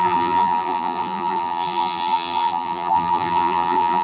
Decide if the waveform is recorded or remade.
remade